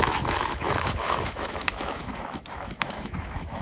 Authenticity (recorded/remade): remade